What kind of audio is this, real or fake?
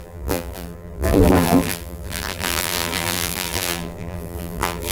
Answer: fake